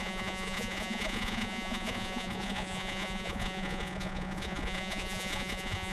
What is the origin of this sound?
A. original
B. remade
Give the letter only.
B